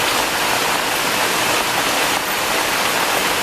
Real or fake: real